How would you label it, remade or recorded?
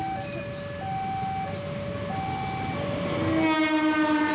recorded